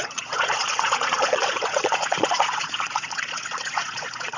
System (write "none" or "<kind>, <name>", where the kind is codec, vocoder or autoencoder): vocoder, Vocos